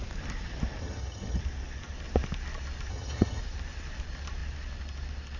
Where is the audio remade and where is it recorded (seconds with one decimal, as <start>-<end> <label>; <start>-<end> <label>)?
0.0-0.8 recorded; 0.8-1.4 remade; 1.4-2.9 recorded; 2.9-3.4 remade; 3.4-5.4 recorded